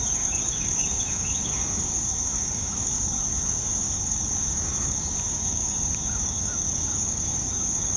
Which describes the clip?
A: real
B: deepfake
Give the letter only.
B